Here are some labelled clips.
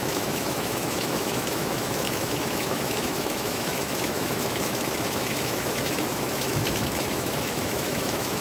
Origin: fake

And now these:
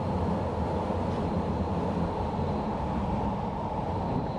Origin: real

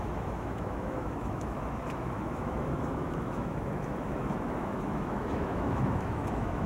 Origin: fake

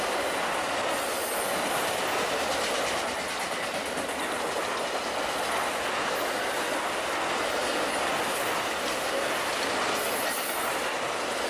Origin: real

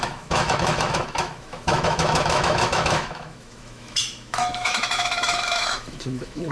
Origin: fake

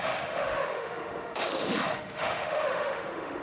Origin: fake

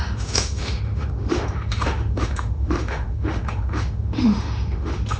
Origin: fake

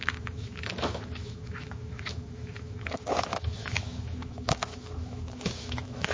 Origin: fake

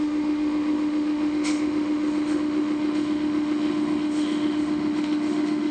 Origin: fake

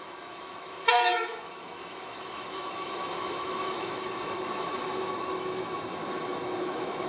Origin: fake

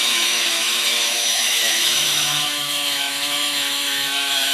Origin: fake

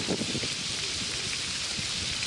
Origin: real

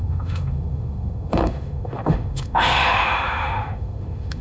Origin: fake